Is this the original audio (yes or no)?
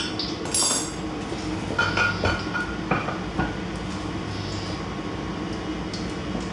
yes